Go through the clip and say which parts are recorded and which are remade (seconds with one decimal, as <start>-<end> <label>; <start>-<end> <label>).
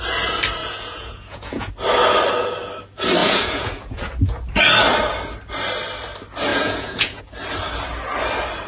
0.0-0.6 recorded; 0.6-1.7 remade; 1.7-3.2 recorded; 3.2-4.1 remade; 4.1-6.5 recorded; 6.5-7.2 remade; 7.2-8.7 recorded